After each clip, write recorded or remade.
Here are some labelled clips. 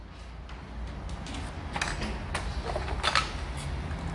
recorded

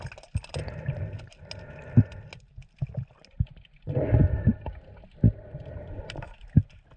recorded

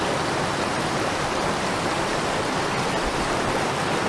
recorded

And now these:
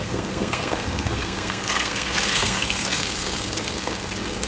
remade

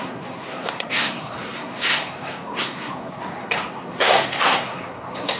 remade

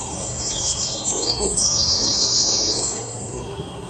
remade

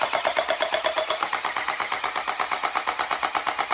recorded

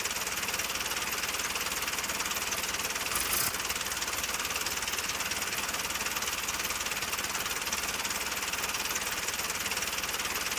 recorded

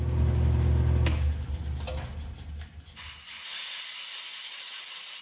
recorded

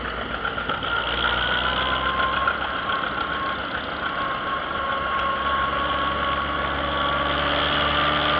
recorded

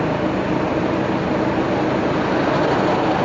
recorded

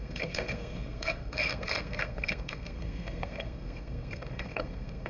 remade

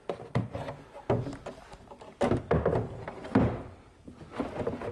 recorded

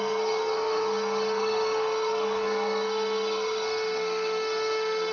remade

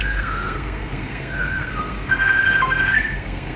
remade